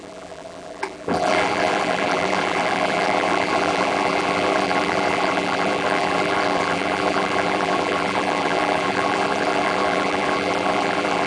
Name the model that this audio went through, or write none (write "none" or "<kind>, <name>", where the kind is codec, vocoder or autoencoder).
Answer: vocoder, BigVGAN v2